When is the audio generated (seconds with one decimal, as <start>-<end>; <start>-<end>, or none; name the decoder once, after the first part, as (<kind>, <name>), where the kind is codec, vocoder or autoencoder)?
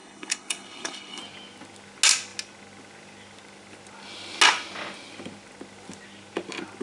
0.0-1.2 (codec, HILCodec)